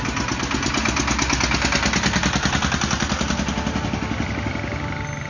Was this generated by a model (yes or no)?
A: no